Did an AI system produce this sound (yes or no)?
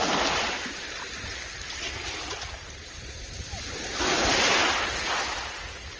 no